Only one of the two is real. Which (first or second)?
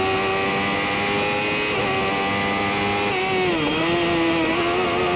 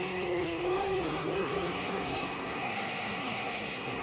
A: first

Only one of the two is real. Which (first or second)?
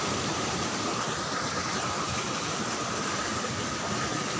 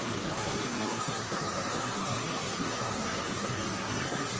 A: first